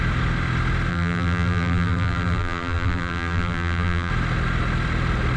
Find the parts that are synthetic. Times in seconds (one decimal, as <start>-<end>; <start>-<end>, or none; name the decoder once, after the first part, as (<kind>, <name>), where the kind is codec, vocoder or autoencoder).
0.9-4.1 (vocoder, BigVGAN v2)